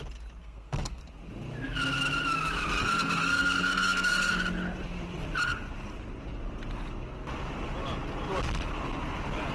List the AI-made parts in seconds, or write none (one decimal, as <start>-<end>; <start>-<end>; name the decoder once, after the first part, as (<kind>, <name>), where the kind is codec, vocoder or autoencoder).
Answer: 0.4-1.0 (codec, SNAC); 2.8-4.3